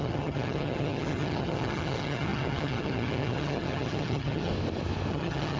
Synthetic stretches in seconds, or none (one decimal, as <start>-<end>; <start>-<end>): 0.0-4.5; 5.1-5.6